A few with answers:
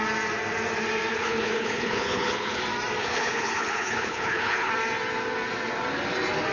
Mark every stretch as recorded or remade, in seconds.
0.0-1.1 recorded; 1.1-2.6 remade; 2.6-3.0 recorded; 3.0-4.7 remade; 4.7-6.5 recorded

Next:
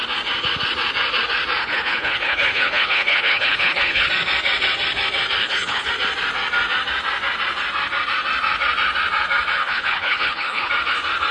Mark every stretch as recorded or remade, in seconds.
0.0-1.6 recorded; 1.6-4.1 remade; 4.1-5.4 recorded; 5.4-5.9 remade; 5.9-9.6 recorded; 9.6-10.7 remade; 10.7-11.3 recorded

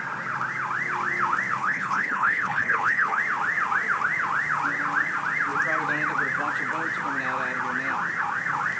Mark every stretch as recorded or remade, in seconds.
0.0-1.6 recorded; 1.6-3.2 remade; 3.2-8.8 recorded

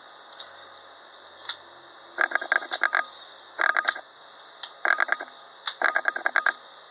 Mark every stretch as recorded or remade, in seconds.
0.0-6.9 recorded

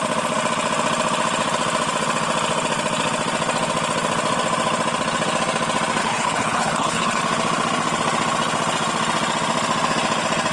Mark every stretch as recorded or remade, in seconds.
0.0-6.0 recorded; 6.0-7.2 remade; 7.2-10.5 recorded

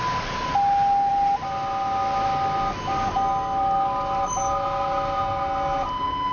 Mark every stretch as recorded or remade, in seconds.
0.0-6.3 recorded

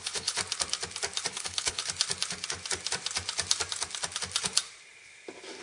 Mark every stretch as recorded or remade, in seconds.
0.0-0.4 remade; 0.4-1.3 recorded; 1.3-1.8 remade; 1.8-5.6 recorded